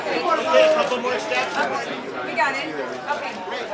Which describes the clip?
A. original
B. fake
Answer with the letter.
A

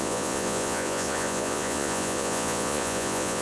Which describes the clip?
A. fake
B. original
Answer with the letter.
A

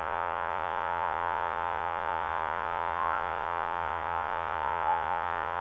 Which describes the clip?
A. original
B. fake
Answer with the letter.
B